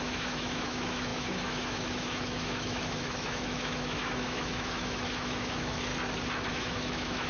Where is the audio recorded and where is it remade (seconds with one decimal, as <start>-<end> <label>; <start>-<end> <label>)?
0.0-5.9 remade; 5.9-6.5 recorded; 6.5-7.3 remade